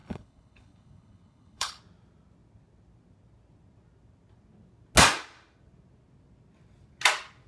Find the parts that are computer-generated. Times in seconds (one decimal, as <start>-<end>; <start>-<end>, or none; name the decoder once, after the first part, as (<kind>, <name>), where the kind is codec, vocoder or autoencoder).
0.0-1.8 (codec, HILCodec)

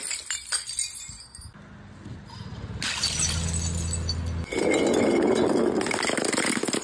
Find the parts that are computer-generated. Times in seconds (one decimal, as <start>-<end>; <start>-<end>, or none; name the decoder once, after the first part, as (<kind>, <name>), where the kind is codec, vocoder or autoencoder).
none

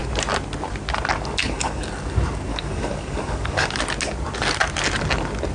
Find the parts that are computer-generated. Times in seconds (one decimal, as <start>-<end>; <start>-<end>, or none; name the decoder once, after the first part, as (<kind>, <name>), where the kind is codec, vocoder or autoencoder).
1.4-1.9 (codec, DAC); 2.5-3.8